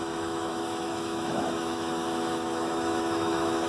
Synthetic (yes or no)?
yes